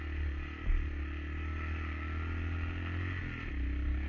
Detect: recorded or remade recorded